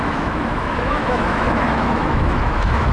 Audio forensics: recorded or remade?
remade